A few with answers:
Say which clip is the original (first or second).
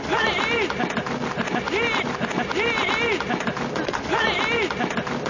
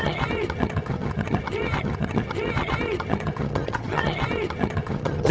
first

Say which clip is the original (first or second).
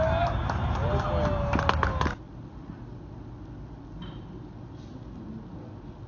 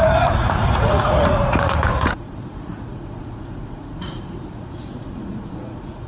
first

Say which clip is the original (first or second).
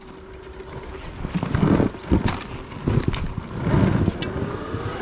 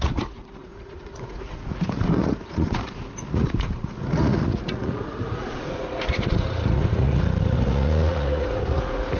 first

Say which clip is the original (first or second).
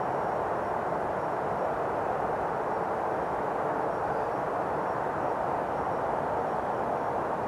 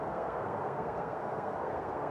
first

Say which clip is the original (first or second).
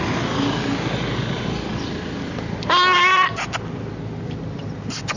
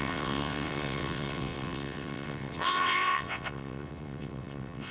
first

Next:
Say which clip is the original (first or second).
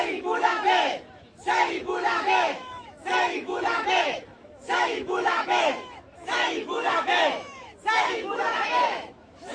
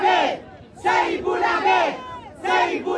second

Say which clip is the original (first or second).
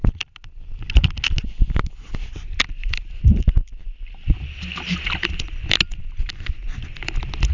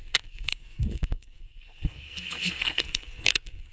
first